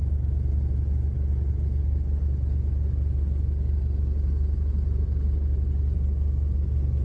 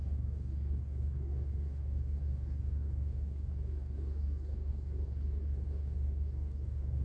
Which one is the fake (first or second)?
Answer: second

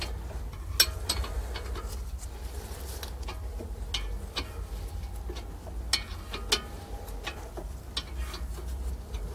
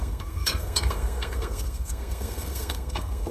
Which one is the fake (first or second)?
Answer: second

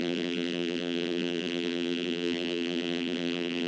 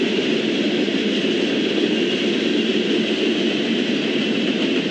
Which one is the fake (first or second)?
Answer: first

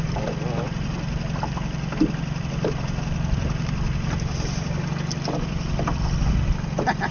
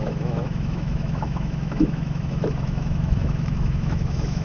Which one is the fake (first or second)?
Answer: second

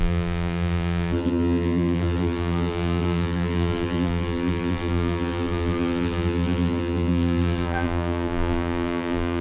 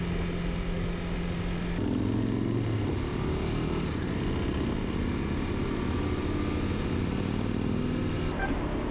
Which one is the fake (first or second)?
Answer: first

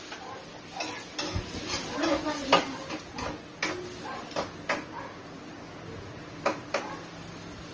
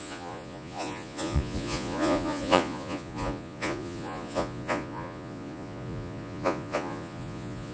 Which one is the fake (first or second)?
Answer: second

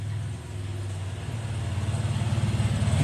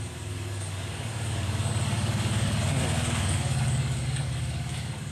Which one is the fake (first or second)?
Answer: second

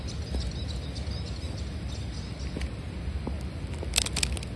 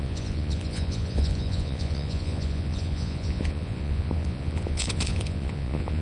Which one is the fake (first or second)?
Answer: second